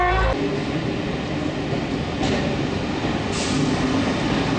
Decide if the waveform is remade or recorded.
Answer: recorded